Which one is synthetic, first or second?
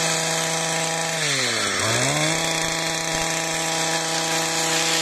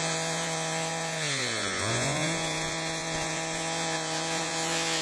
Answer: second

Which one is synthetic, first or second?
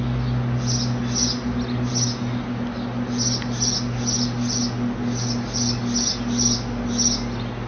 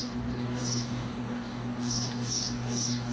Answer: second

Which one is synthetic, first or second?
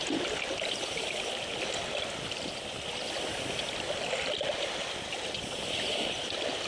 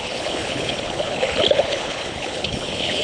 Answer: second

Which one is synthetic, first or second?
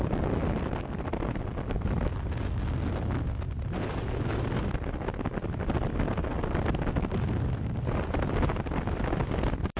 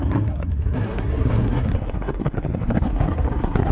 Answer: second